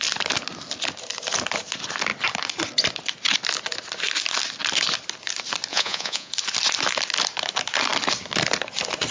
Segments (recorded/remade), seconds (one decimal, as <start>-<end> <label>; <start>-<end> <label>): 0.0-5.7 recorded; 5.7-6.3 remade; 6.3-9.1 recorded